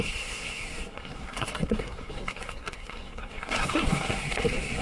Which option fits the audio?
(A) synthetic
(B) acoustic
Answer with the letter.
A